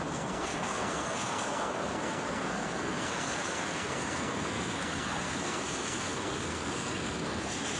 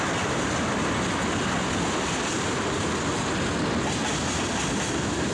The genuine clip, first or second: second